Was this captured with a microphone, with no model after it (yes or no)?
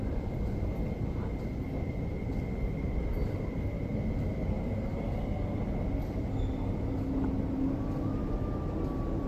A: yes